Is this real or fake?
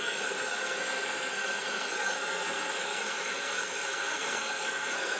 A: fake